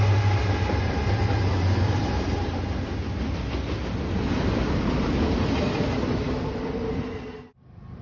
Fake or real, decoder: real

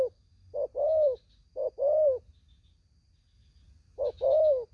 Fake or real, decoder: real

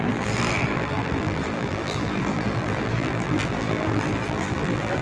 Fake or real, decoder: fake, vocoder, BigVGAN v2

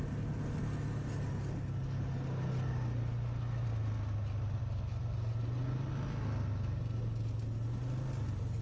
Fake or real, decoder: real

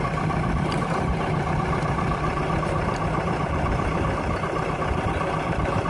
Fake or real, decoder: fake, vocoder, BigVGAN v2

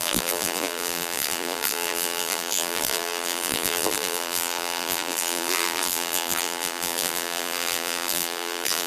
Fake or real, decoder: fake, vocoder, BigVGAN v2